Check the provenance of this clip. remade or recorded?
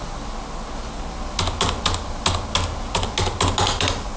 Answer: recorded